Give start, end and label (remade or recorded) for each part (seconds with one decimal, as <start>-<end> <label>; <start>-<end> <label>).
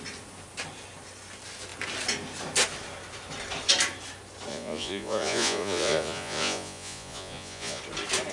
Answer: 0.0-4.5 recorded; 4.5-7.8 remade; 7.8-8.3 recorded